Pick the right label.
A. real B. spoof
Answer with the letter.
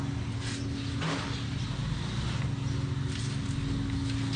A